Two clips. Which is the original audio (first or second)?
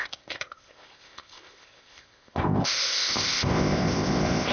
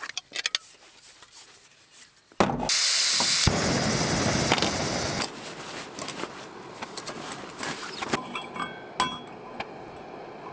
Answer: second